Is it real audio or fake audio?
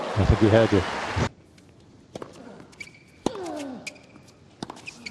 real